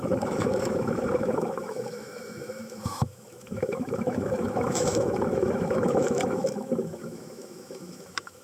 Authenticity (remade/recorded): remade